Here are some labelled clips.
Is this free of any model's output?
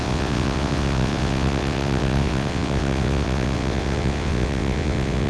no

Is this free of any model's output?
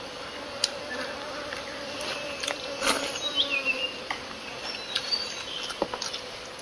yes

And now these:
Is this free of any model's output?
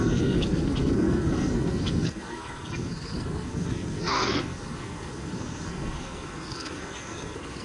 no